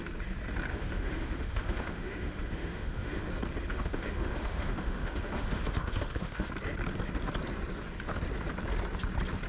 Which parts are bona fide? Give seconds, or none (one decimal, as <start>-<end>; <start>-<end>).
0.0-0.7; 3.3-3.7; 6.5-9.5